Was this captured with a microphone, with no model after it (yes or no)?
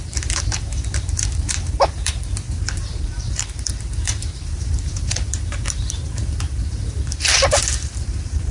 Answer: no